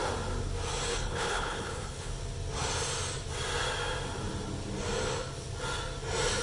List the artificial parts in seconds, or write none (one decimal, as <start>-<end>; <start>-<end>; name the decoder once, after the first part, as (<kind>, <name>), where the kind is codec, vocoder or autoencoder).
0.9-2.1 (codec, HILCodec)